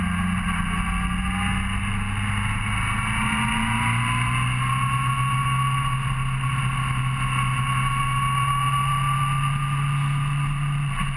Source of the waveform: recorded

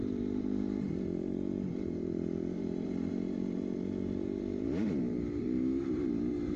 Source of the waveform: remade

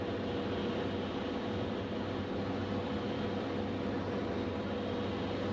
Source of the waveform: recorded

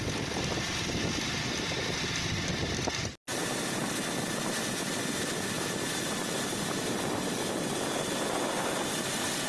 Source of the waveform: recorded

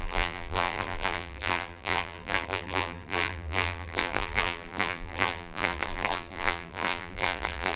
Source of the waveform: remade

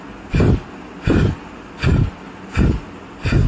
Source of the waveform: recorded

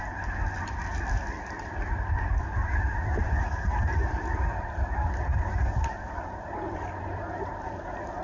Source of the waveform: remade